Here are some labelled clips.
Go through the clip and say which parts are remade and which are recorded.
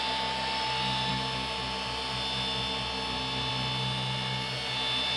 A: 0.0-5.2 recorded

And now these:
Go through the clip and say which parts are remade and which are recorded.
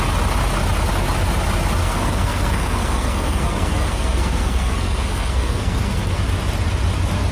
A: 0.0-1.8 recorded; 1.8-6.2 remade; 6.2-7.3 recorded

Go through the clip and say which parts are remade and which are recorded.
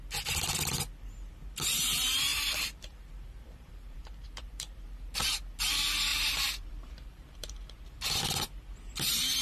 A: 0.0-2.3 recorded; 2.3-5.3 remade; 5.3-6.1 recorded; 6.1-8.2 remade; 8.2-9.4 recorded